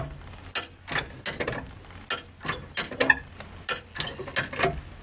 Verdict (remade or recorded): recorded